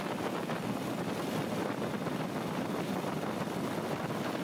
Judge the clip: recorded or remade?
recorded